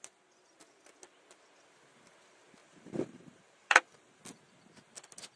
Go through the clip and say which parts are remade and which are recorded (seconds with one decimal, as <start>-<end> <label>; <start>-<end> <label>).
0.0-2.6 recorded; 2.6-4.2 remade; 4.2-5.4 recorded